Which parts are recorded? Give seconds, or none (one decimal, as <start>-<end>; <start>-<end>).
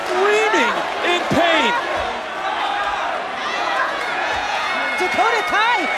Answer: 0.0-3.4; 4.8-6.0